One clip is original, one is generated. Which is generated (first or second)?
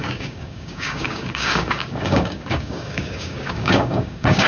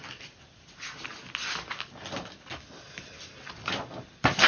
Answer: first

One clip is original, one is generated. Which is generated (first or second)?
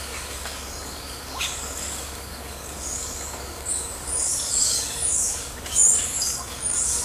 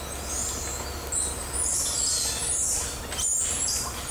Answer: first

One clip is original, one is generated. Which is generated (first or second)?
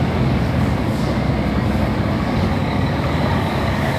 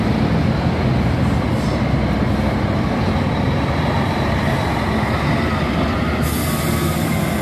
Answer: first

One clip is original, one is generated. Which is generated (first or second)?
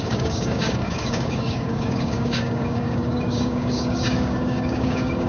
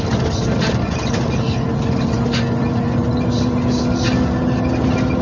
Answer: first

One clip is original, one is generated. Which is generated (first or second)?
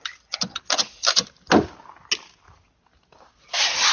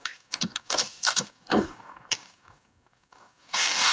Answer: second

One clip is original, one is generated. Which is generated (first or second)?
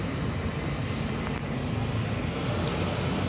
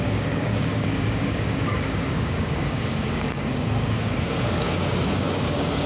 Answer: second